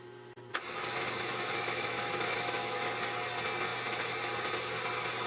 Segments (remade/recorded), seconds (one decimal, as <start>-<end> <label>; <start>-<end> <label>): 0.0-1.3 recorded; 1.3-2.9 remade; 2.9-5.3 recorded